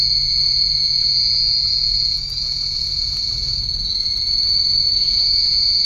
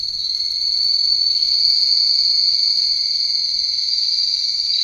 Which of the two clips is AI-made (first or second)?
first